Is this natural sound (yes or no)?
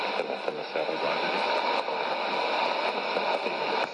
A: yes